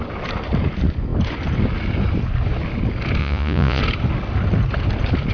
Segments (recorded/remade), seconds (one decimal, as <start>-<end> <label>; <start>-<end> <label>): 0.0-3.2 recorded; 3.2-3.8 remade; 3.8-5.3 recorded